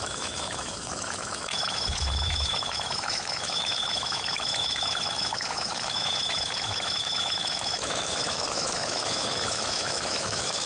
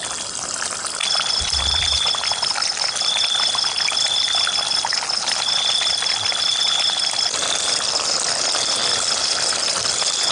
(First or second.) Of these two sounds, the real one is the second